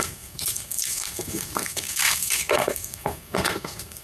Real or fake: fake